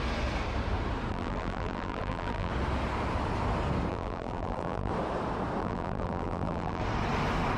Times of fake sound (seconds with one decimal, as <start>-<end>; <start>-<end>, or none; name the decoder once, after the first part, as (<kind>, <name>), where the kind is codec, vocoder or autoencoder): 1.1-2.5 (vocoder, BigVGAN v2); 3.9-4.9; 5.6-6.8